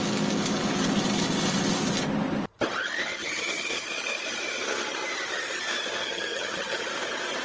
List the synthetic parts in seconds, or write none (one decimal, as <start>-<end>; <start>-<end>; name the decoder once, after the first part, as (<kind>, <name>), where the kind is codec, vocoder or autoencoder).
3.1-3.8 (vocoder, HiFi-GAN); 6.0-6.8